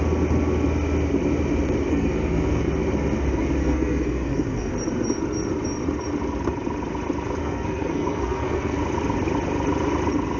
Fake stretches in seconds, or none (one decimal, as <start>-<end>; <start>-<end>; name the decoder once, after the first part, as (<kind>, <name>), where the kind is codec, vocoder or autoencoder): 1.9-2.7 (codec, SNAC); 3.6-4.7; 7.4-8.8

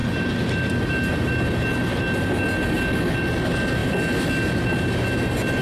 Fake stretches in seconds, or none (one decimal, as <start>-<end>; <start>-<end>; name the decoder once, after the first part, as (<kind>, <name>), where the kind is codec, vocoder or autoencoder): none

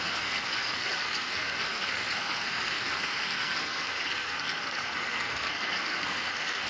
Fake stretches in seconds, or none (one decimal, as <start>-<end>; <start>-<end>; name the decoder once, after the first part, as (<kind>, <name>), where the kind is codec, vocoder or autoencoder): 0.0-6.7 (codec, SNAC)

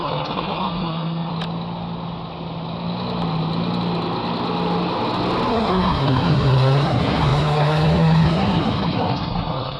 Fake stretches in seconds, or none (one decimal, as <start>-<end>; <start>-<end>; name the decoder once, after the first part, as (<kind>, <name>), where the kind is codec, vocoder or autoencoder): 0.0-1.3 (codec, SNAC); 5.5-9.8

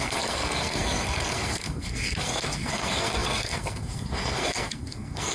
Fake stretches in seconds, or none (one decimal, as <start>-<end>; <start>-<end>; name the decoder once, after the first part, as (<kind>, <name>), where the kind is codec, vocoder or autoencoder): 0.0-5.3 (codec, SNAC)

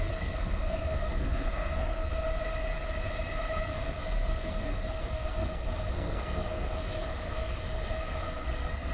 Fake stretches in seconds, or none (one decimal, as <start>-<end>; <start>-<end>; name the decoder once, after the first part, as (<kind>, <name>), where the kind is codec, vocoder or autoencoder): 0.0-2.1 (codec, SNAC); 3.6-8.9

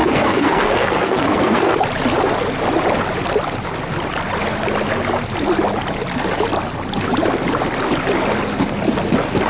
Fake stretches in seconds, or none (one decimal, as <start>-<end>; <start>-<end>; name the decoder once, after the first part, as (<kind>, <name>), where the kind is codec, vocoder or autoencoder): 0.0-1.8 (codec, SNAC)